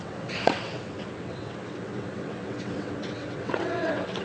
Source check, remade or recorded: remade